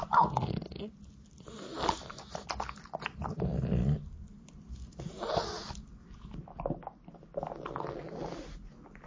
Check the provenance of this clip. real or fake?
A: real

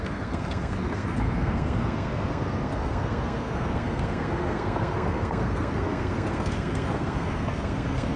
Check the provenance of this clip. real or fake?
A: fake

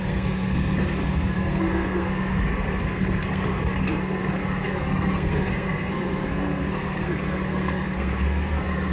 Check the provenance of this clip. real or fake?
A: fake